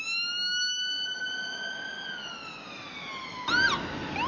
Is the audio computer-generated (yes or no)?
no